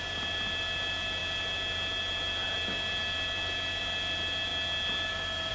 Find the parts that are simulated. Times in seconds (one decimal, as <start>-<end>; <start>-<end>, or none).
none